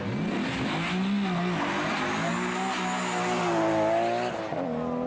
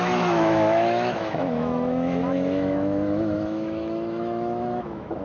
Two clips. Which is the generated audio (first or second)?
second